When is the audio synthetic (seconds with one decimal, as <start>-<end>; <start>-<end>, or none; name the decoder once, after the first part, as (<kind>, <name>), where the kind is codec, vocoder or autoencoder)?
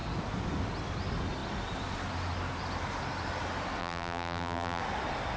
3.8-4.8 (vocoder, BigVGAN v2)